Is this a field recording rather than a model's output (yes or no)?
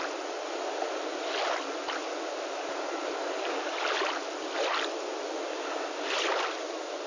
yes